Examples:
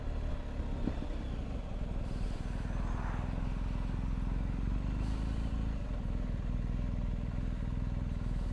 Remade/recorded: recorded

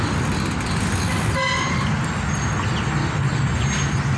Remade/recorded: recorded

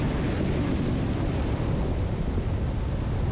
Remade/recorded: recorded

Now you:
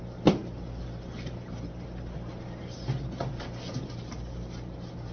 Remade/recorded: recorded